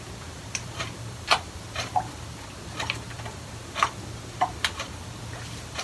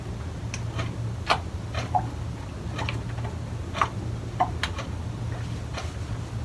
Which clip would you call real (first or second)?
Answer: second